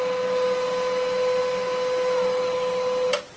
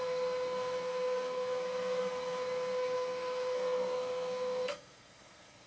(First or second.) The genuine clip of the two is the first